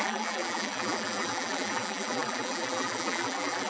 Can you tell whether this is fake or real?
fake